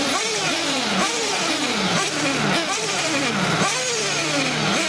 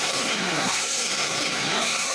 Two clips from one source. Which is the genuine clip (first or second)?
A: first